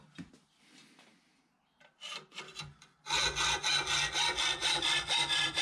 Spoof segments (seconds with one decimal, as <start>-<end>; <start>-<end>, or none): 0.0-1.1; 4.5-5.6